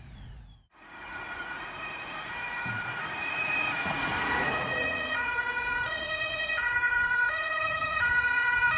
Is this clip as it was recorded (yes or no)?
no